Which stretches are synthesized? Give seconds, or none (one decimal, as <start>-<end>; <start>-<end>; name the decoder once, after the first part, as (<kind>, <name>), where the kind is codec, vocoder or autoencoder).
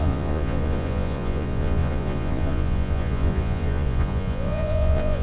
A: 0.0-5.2 (vocoder, Vocos)